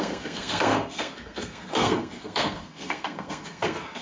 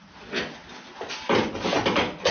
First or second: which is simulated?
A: first